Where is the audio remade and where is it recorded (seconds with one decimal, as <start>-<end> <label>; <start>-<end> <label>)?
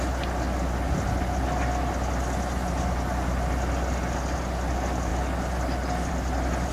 0.0-6.7 recorded